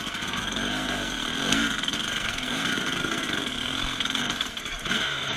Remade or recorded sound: remade